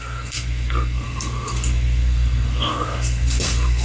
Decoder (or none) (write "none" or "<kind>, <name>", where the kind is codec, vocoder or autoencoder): codec, SNAC